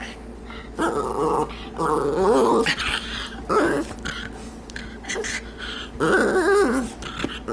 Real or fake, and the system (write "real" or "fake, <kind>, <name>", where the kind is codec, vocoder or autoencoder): real